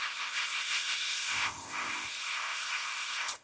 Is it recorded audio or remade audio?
remade